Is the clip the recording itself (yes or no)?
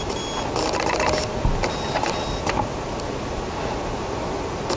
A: yes